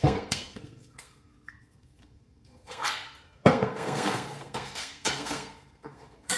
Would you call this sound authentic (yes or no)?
no